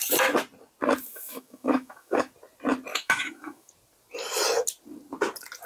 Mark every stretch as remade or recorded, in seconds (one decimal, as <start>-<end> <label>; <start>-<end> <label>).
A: 0.0-1.1 recorded; 1.1-2.3 remade; 2.3-2.9 recorded; 2.9-3.7 remade; 3.7-5.7 recorded